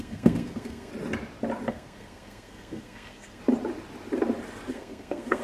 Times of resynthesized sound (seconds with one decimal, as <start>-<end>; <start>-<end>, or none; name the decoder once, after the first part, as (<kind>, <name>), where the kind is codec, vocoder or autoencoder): 0.0-0.9 (codec, SNAC); 1.7-3.4; 4.7-5.4